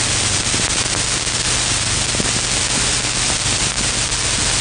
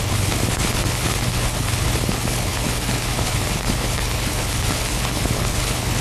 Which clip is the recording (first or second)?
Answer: first